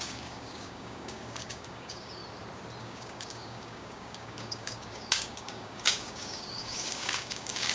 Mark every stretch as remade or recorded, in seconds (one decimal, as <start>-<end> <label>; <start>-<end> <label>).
0.0-2.2 remade; 2.2-2.8 recorded; 2.8-7.7 remade